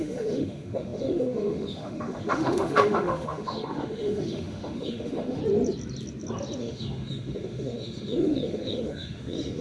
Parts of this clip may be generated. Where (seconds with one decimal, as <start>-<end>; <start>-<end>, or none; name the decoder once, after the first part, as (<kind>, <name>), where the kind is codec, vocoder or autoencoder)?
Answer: 0.0-5.4 (autoencoder, DAC-VAE); 6.6-9.6